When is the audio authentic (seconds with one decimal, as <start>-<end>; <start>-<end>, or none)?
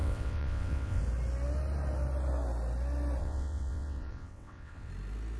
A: 1.0-3.2; 4.9-5.4